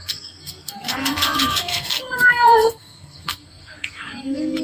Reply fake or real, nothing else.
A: fake